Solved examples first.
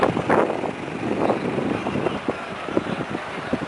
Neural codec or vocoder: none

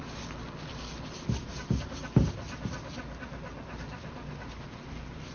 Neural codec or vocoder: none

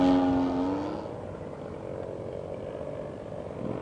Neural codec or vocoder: none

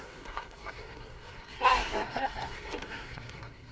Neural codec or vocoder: codec, SNAC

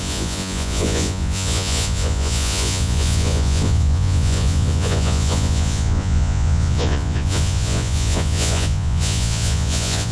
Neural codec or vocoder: vocoder, Vocos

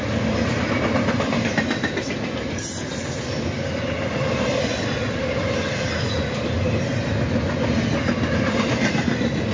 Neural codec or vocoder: none